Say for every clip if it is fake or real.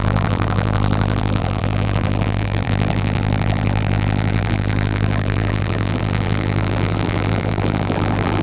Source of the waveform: fake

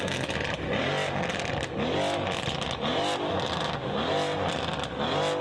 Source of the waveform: real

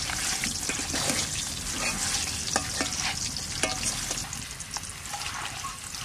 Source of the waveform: real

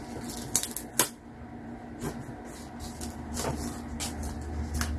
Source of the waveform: real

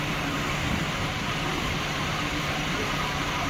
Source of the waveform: fake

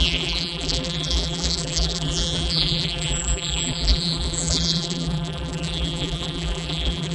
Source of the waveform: fake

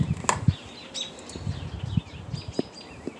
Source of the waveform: real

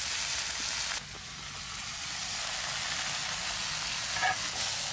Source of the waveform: real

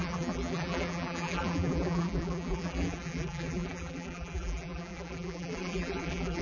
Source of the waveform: fake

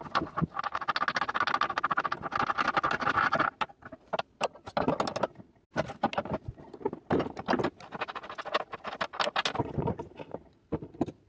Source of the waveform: real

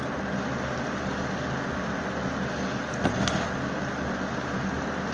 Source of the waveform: real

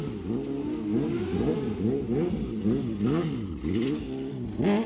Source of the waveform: real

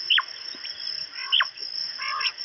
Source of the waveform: real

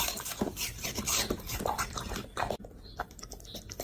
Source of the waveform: fake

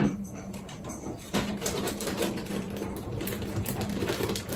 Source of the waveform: fake